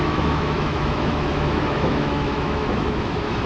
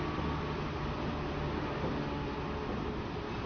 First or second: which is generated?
first